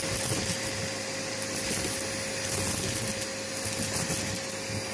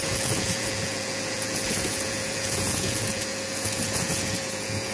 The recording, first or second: first